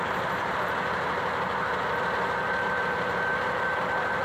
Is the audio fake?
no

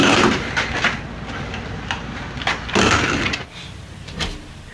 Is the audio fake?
no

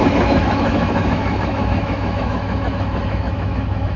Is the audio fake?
yes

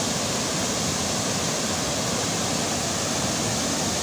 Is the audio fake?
no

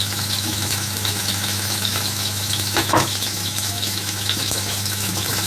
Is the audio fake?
yes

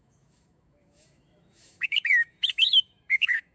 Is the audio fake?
yes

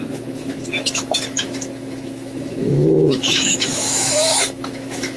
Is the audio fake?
yes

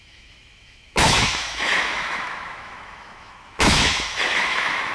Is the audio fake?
yes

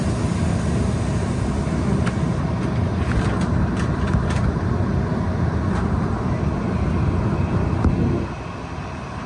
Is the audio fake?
no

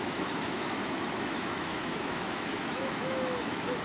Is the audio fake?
yes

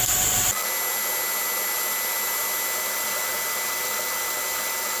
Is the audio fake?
no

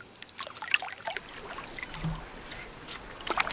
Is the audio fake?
no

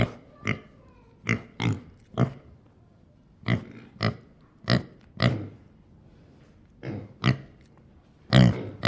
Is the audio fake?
no